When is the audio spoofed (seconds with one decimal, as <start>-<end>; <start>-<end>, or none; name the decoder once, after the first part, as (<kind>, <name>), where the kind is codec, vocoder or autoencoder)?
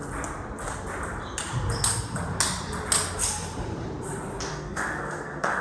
4.5-5.6 (codec, SNAC)